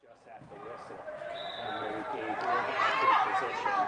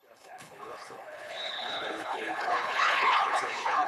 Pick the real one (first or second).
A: first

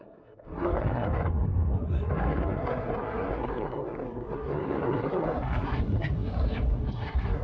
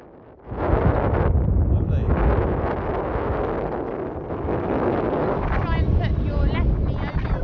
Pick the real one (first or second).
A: second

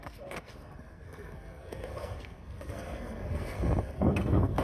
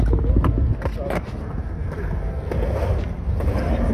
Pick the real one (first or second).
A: second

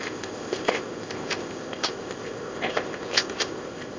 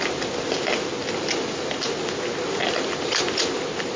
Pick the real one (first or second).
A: second